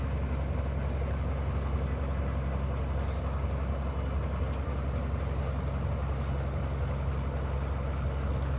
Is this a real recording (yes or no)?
yes